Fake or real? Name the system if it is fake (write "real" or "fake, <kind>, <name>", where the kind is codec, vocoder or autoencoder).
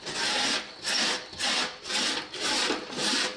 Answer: real